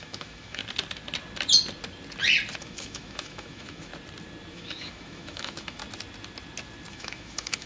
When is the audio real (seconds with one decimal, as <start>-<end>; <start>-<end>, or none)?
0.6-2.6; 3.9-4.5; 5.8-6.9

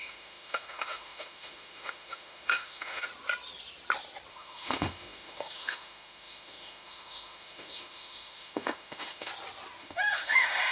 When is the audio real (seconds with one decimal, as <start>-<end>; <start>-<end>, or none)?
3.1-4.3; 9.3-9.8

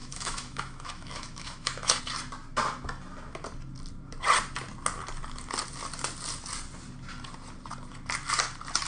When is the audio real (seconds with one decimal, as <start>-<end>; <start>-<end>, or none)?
2.0-8.9